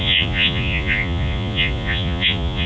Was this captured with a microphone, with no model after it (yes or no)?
no